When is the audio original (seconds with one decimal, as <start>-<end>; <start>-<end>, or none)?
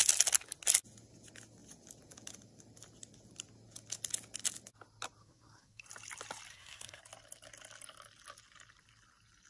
0.0-5.2; 5.8-6.5; 7.0-9.5